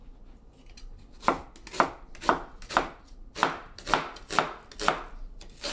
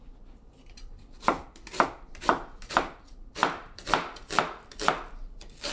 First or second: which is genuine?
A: first